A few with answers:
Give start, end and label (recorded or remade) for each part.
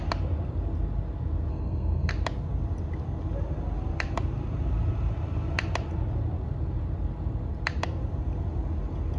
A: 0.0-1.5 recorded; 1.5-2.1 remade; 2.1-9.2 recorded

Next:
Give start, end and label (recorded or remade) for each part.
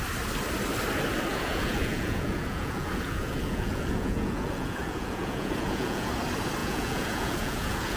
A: 0.0-1.3 recorded; 1.3-6.1 remade; 6.1-6.6 recorded; 6.6-8.0 remade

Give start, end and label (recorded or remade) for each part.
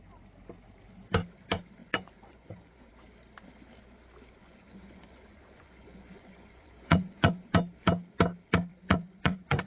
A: 0.0-1.8 recorded; 1.8-2.9 remade; 2.9-4.4 recorded; 4.4-7.5 remade; 7.5-8.7 recorded; 8.7-9.7 remade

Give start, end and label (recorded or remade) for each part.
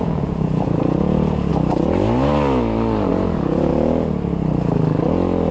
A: 0.0-1.5 remade; 1.5-3.1 recorded; 3.1-3.7 remade; 3.7-5.5 recorded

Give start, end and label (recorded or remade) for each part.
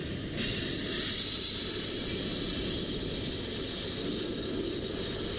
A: 0.0-3.0 remade; 3.0-4.0 recorded; 4.0-4.7 remade; 4.7-5.4 recorded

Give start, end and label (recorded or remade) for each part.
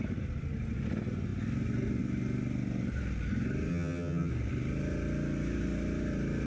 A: 0.0-3.7 recorded; 3.7-4.3 remade; 4.3-6.5 recorded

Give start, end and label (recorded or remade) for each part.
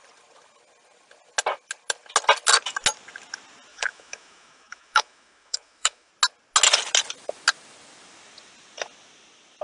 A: 0.0-3.7 recorded; 3.7-6.1 remade; 6.1-9.6 recorded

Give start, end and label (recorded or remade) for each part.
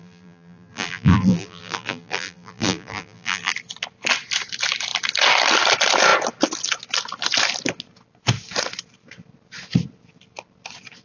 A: 0.0-3.5 remade; 3.5-11.0 recorded